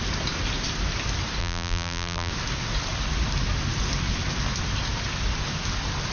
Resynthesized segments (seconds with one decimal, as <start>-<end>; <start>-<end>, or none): 1.4-2.3